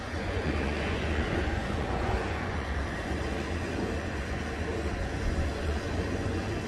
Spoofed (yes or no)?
yes